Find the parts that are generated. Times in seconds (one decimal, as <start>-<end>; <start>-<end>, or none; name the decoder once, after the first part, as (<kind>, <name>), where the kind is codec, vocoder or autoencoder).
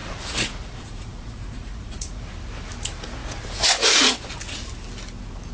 0.0-2.2 (vocoder, Vocos); 3.2-4.4